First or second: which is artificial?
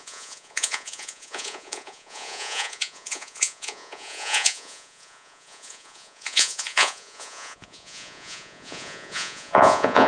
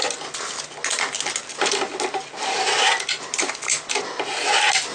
first